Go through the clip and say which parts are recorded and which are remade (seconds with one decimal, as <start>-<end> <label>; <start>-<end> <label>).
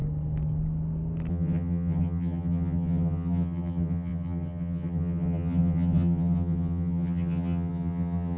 0.0-1.3 recorded; 1.3-8.4 remade